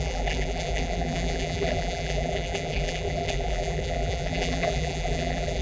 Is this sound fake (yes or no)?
yes